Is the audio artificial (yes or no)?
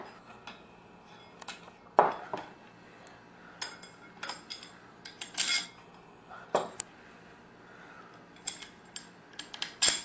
no